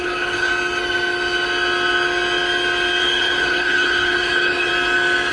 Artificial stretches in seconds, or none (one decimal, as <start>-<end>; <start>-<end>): 0.0-0.5; 3.0-4.7